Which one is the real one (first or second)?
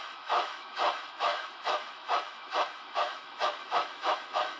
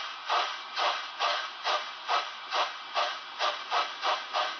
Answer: second